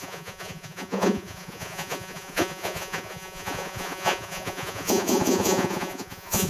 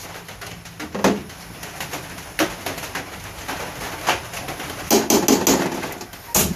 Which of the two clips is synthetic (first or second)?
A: first